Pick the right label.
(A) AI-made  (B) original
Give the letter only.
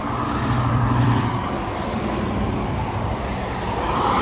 A